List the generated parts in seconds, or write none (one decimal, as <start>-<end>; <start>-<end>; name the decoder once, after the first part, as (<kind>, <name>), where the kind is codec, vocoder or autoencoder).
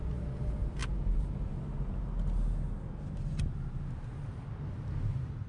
none